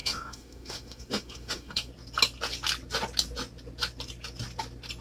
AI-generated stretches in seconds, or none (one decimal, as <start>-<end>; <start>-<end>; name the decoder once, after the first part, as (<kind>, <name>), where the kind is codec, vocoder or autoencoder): 0.0-1.9 (autoencoder, DAC-VAE)

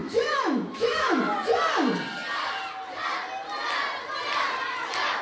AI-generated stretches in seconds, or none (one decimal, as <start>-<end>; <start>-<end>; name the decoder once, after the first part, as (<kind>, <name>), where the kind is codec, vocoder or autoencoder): 0.0-1.2 (autoencoder, DAC-VAE)

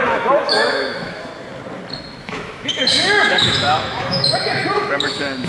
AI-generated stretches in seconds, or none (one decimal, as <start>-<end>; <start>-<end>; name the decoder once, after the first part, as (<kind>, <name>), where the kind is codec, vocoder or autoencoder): 0.0-1.3 (autoencoder, DAC-VAE); 2.2-5.5

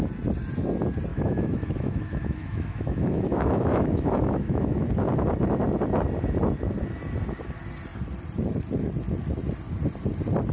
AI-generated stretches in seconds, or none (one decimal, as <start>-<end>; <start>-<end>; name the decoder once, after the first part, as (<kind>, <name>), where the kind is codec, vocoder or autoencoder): 1.1-4.9 (autoencoder, DAC-VAE)

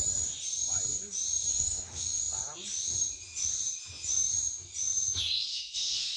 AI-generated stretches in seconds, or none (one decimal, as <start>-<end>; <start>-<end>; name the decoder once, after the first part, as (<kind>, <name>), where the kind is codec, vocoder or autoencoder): 1.5-2.2 (autoencoder, DAC-VAE); 5.5-6.2